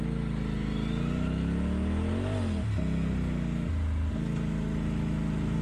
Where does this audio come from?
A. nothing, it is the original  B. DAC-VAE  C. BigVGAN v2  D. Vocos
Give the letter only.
A